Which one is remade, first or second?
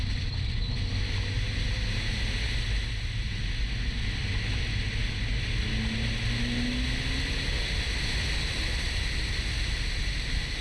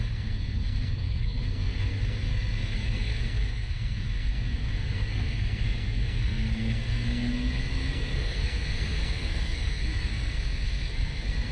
second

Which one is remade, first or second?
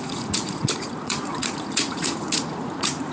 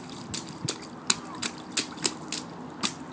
first